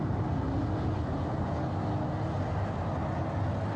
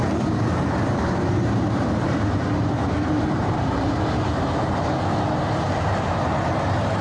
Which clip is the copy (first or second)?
second